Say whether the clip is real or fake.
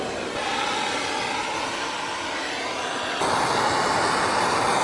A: real